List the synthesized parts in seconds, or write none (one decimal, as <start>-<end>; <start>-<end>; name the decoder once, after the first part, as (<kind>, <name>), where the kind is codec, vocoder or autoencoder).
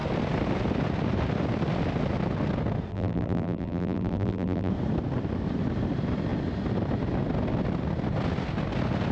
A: 2.9-4.7 (vocoder, BigVGAN v2)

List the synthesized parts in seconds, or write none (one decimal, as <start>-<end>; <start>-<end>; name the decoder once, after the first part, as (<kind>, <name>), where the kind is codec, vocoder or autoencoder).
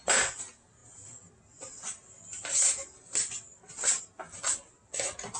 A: none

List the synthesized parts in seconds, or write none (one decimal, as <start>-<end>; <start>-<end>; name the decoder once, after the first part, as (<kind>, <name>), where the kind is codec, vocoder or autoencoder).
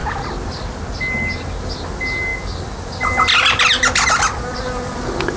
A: 0.0-0.8 (vocoder, BigVGAN v2)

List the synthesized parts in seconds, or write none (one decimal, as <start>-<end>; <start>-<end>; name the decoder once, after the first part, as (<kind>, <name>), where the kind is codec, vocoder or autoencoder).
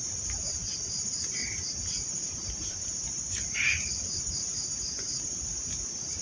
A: 0.0-6.2 (vocoder, BigVGAN v2)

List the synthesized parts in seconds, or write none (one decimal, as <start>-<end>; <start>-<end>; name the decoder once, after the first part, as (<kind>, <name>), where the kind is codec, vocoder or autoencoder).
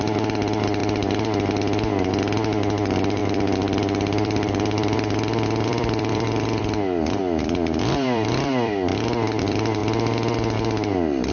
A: 0.0-0.8 (vocoder, BigVGAN v2); 2.1-8.9; 9.4-9.8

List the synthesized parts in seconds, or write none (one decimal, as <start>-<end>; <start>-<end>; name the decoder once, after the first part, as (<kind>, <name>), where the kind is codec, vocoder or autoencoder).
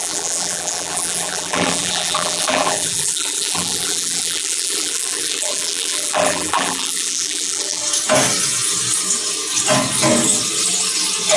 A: 0.0-7.8 (vocoder, BigVGAN v2)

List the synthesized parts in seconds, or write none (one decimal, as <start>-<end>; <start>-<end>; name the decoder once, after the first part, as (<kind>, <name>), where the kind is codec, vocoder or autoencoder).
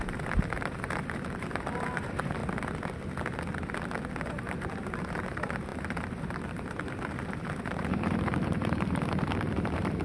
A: 0.0-2.4 (vocoder, BigVGAN v2); 4.2-10.0